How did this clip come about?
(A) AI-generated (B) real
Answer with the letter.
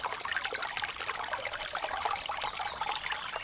B